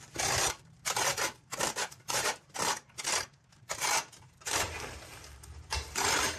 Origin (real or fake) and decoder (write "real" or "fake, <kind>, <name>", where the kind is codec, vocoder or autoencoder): fake, vocoder, BigVGAN v2